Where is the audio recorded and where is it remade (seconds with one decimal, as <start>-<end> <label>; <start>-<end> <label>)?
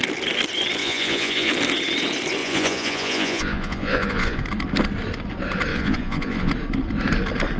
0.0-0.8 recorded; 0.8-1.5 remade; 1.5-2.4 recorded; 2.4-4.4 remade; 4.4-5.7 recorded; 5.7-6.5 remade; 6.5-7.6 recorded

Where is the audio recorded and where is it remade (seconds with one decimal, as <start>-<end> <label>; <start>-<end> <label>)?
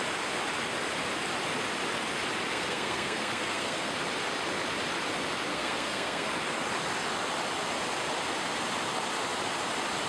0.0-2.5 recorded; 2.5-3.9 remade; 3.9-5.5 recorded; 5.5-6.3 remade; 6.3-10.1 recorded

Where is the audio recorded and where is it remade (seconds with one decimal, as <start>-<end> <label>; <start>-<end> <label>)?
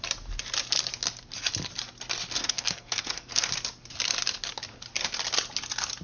0.0-2.4 recorded; 2.4-3.5 remade; 3.5-6.0 recorded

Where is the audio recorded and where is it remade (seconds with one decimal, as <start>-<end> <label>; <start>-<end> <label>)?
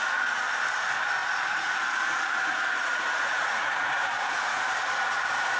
0.0-1.2 recorded; 1.2-4.6 remade; 4.6-5.6 recorded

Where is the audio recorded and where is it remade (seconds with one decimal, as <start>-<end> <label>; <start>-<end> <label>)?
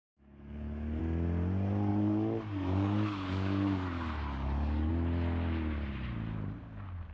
0.0-1.0 remade; 1.0-1.9 recorded; 1.9-4.9 remade; 4.9-7.1 recorded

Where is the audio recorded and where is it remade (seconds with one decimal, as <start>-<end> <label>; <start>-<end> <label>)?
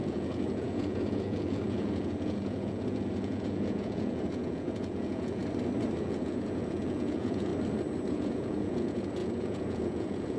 0.0-5.4 remade; 5.4-6.0 recorded; 6.0-7.5 remade; 7.5-8.1 recorded; 8.1-10.4 remade